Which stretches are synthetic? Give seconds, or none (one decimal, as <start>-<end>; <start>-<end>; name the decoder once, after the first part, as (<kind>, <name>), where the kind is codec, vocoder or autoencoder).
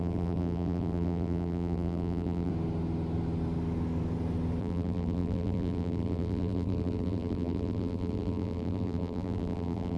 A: 0.0-2.5 (vocoder, BigVGAN v2); 4.6-10.0